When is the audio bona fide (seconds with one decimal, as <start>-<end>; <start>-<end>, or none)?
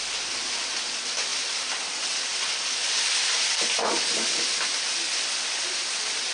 0.0-1.3; 1.8-2.3